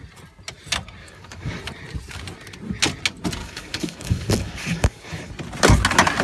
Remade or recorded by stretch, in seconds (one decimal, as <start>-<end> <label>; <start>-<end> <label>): 0.0-1.0 recorded; 1.0-1.6 remade; 1.6-3.4 recorded; 3.4-5.3 remade; 5.3-6.2 recorded